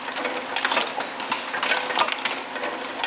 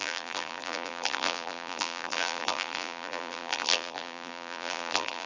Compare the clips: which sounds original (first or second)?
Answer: first